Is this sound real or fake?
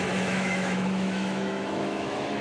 fake